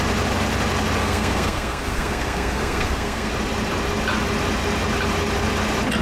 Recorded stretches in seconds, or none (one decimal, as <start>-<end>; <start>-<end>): 0.0-1.0; 3.3-6.0